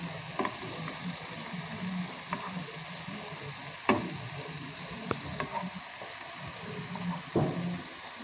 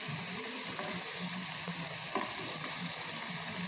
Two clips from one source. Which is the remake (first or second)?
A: second